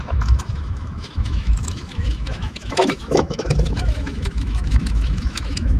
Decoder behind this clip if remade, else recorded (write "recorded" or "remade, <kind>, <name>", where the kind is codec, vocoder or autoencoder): remade, autoencoder, DAC-VAE